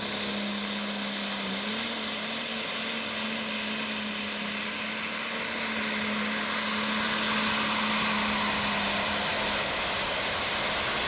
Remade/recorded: recorded